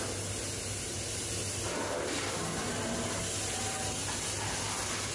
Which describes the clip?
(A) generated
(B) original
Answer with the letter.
B